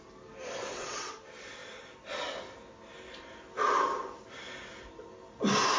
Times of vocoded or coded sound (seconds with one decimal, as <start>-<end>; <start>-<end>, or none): 0.6-1.1